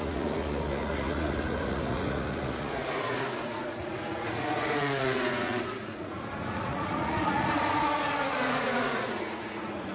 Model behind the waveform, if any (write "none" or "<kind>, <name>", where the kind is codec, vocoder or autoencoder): vocoder, Vocos